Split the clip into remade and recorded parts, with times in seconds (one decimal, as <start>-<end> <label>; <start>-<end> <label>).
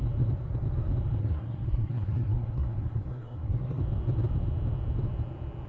0.0-1.2 recorded; 1.2-3.8 remade; 3.8-5.7 recorded